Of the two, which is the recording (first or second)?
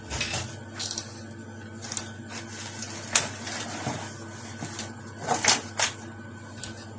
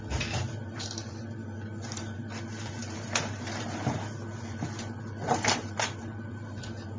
first